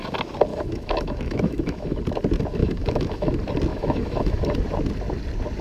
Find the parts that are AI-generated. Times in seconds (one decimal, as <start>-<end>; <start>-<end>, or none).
0.5-2.0; 2.6-3.3; 3.7-4.4